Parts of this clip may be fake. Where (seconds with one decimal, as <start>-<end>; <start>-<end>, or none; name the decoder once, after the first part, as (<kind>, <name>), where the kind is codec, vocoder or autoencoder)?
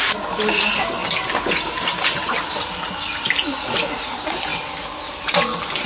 none